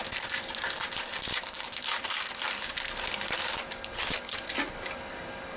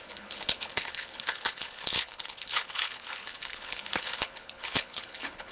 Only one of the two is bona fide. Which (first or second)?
first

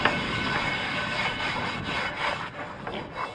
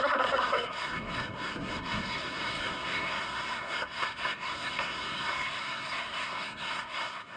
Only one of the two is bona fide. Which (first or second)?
first